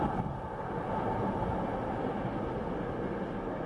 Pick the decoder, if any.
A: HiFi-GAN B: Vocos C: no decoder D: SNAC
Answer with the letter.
C